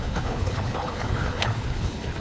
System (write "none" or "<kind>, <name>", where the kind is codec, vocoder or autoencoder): codec, HILCodec